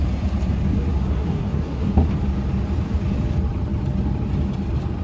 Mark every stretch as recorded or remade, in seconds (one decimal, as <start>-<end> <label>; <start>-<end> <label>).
0.0-1.1 recorded; 1.1-1.9 remade; 1.9-5.0 recorded